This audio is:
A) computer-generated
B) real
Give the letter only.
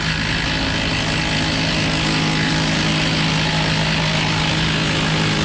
B